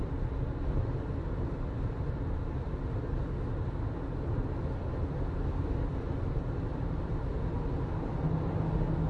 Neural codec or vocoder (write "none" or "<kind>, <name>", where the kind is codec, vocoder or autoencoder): none